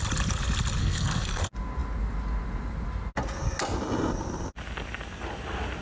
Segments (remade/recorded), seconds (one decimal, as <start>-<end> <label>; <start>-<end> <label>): 0.0-0.8 recorded; 0.8-1.4 remade; 1.4-5.8 recorded